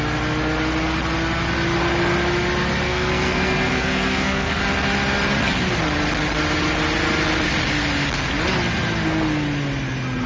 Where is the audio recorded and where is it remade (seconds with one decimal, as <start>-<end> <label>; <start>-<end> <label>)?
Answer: 0.0-2.9 recorded; 2.9-4.6 remade; 4.6-10.3 recorded